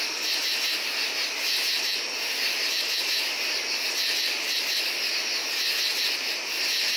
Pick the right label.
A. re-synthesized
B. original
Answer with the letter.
B